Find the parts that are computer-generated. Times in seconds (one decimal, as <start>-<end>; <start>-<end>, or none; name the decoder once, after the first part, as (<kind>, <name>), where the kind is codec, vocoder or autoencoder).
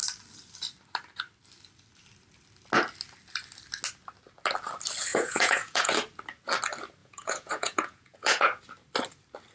5.1-5.9 (vocoder, Vocos); 7.0-8.6